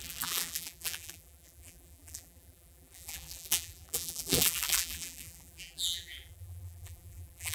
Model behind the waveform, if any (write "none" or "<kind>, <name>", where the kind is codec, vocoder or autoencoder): vocoder, BigVGAN v2